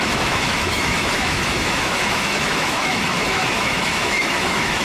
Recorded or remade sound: remade